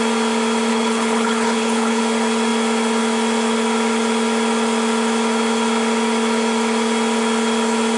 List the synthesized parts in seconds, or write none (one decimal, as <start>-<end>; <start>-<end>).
0.7-2.0